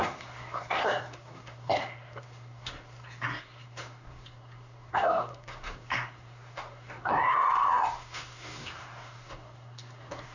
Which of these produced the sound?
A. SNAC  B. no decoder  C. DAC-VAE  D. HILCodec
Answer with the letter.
A